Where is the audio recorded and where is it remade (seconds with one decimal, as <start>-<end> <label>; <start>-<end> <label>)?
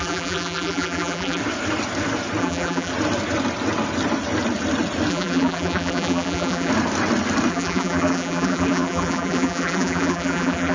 0.0-1.4 remade; 1.4-2.4 recorded; 2.4-2.9 remade; 2.9-5.1 recorded; 5.1-6.7 remade; 6.7-7.5 recorded; 7.5-10.7 remade